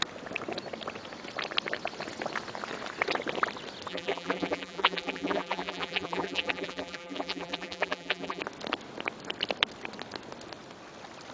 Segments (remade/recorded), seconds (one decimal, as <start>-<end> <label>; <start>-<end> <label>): 0.0-3.9 recorded; 3.9-8.4 remade; 8.4-11.3 recorded